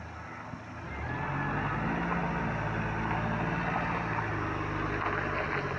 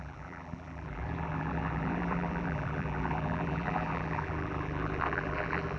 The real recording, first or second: first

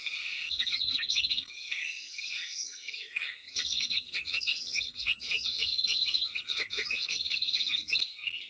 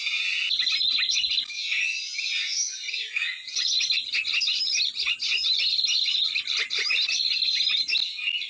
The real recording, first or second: second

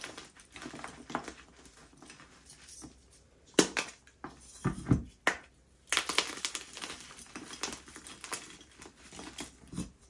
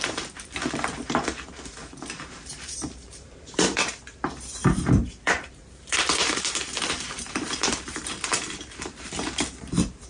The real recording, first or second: first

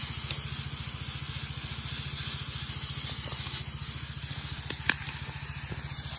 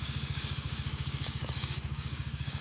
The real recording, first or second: first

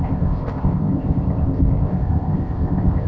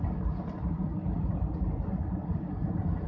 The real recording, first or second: second